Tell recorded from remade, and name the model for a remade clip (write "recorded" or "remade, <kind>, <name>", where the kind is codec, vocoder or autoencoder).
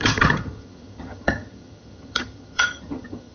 remade, vocoder, HiFi-GAN